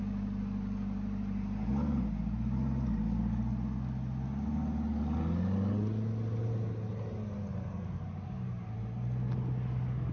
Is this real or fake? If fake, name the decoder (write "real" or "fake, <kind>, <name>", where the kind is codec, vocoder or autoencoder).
real